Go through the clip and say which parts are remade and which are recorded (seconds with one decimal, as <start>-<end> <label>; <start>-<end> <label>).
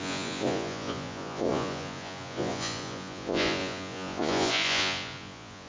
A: 0.0-5.7 remade